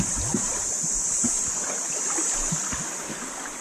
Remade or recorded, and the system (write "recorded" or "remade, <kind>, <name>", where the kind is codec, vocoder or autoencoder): recorded